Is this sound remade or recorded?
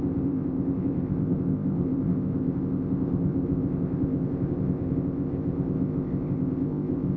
remade